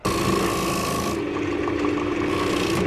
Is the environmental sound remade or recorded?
recorded